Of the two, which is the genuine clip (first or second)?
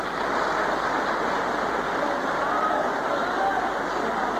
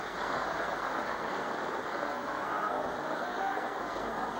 first